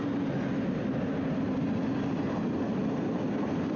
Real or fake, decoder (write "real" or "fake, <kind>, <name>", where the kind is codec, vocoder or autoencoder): real